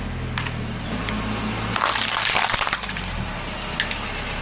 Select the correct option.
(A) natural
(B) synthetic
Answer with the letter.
A